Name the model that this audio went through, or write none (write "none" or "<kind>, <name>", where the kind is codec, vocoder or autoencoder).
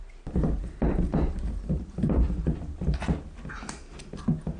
none